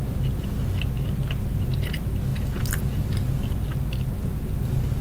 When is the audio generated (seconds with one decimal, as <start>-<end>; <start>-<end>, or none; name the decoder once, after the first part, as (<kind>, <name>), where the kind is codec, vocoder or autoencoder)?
none